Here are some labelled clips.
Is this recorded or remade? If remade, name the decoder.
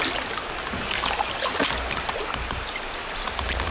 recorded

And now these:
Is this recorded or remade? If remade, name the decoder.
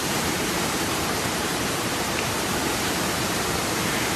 remade, vocoder, BigVGAN v2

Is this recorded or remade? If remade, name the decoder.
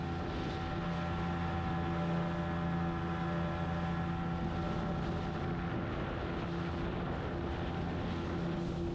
recorded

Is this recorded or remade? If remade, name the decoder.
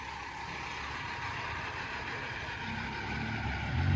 recorded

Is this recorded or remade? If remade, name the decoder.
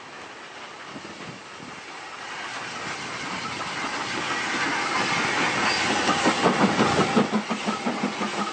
recorded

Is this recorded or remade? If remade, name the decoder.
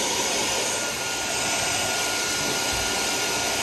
recorded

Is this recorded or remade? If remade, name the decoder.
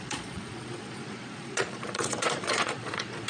remade, vocoder, Vocos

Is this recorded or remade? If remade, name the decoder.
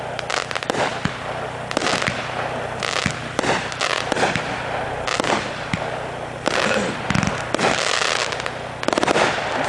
recorded